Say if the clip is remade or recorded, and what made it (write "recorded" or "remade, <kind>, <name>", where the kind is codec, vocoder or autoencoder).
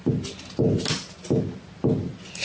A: recorded